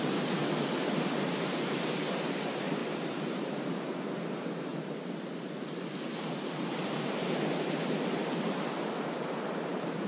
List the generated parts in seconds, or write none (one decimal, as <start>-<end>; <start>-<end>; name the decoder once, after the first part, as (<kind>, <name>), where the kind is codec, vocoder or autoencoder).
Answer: 0.0-0.4 (vocoder, BigVGAN v2); 1.3-4.7; 5.9-8.2; 9.5-10.1